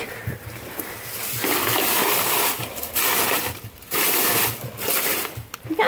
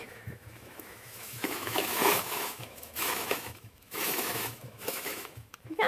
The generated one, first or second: second